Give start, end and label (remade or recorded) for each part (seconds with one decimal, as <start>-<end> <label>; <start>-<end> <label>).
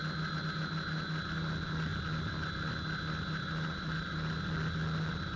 0.0-5.4 recorded